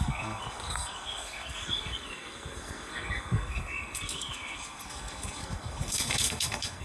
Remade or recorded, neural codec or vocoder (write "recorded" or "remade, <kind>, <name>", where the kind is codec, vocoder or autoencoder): remade, codec, SNAC